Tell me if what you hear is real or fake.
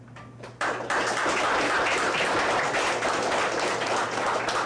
real